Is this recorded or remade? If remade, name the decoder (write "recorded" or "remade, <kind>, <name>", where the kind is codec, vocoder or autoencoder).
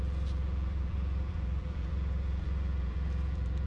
remade, vocoder, BigVGAN v2